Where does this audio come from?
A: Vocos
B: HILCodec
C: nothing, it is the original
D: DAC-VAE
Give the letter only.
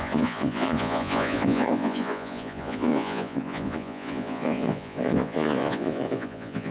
A